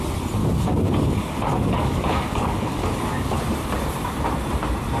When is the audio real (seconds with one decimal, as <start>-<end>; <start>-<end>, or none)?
0.0-0.4; 3.4-5.0